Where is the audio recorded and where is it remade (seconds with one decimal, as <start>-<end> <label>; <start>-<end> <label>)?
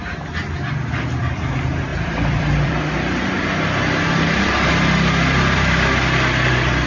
0.0-1.9 recorded; 1.9-2.8 remade; 2.8-6.9 recorded